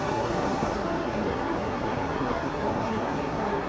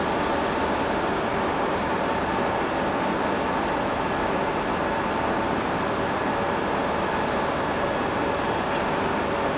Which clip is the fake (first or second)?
first